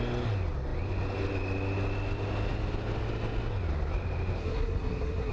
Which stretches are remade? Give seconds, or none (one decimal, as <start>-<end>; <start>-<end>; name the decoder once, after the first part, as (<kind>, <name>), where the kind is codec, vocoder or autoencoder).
4.4-5.3 (codec, SNAC)